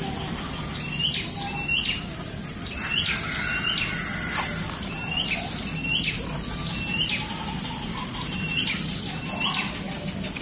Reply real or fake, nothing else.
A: real